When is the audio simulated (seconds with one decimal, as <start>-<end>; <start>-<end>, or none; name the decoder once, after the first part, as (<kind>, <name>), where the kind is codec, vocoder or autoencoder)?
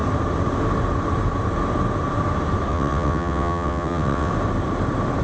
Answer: 2.7-4.3 (vocoder, WaveNeXt)